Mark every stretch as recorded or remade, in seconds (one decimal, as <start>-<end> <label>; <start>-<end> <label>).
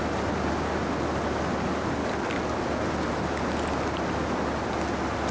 0.0-2.0 recorded; 2.0-2.6 remade; 2.6-5.3 recorded